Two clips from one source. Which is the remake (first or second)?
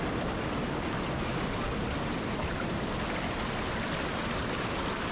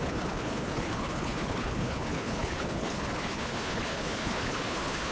second